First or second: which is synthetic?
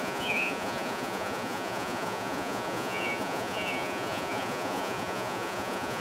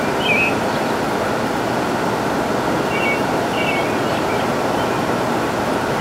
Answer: first